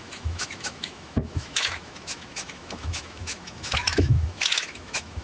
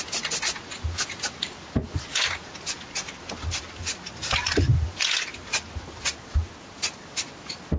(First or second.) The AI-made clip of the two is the first